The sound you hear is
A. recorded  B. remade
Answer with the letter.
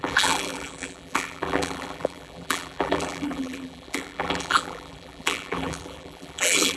B